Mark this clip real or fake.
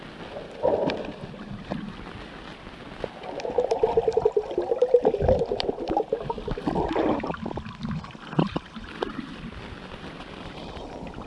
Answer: real